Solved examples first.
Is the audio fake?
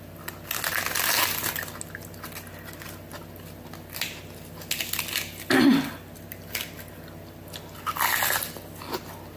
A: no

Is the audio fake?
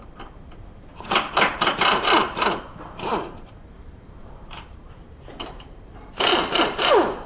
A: yes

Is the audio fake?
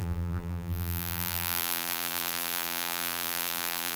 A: yes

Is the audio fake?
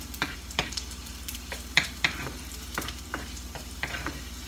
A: yes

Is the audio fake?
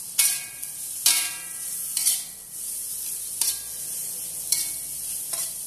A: yes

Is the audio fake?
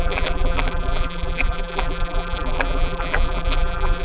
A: yes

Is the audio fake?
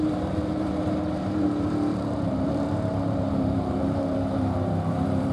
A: yes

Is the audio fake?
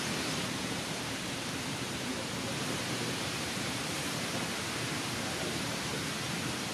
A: yes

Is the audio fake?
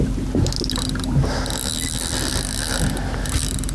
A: no